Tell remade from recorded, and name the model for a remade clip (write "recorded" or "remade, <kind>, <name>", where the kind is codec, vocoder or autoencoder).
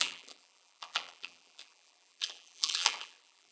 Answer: remade, vocoder, BigVGAN v2